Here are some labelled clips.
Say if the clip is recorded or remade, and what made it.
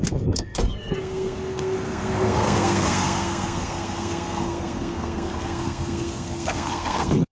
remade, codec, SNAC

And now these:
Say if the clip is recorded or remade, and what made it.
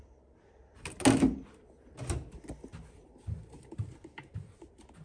recorded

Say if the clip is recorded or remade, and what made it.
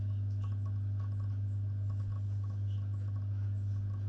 recorded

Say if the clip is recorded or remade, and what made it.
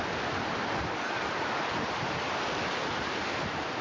recorded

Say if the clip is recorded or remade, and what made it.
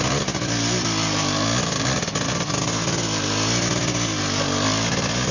recorded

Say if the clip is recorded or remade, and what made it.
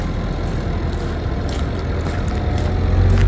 recorded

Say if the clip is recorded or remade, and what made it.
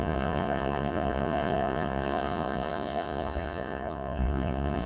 remade, vocoder, Vocos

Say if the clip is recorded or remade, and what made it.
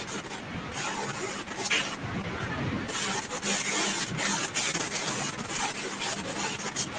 recorded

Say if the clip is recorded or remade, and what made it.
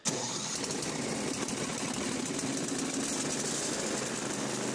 recorded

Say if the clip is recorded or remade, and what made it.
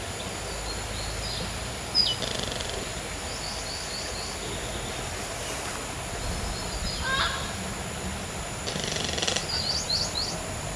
recorded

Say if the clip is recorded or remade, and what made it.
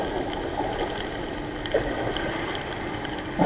recorded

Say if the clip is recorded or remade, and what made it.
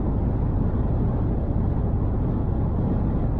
recorded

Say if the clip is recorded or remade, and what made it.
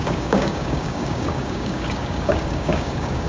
remade, codec, DAC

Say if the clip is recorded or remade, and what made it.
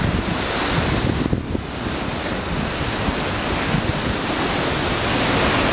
recorded